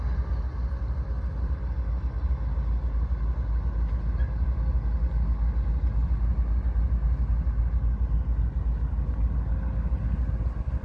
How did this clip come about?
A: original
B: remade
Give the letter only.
A